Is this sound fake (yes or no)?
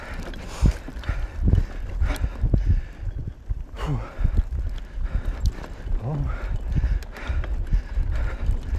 no